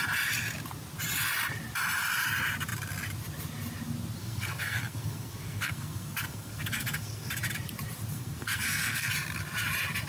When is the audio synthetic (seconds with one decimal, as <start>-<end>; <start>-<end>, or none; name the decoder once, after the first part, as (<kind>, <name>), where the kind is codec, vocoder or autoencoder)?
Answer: 4.2-7.3 (codec, SNAC); 8.1-9.1